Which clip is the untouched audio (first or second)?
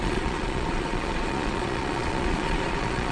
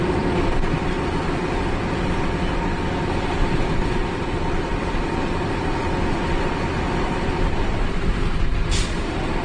second